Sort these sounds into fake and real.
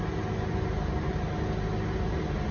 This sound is real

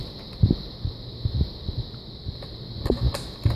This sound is real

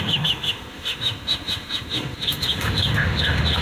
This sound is fake